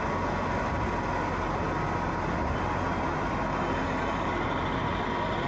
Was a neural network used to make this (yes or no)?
no